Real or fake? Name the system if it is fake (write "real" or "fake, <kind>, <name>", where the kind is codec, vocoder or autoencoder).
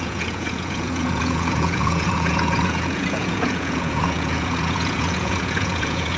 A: fake, vocoder, Vocos